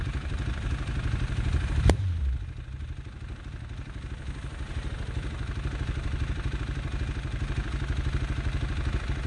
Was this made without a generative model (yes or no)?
yes